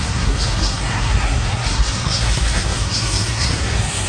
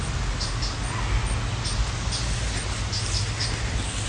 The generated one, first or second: first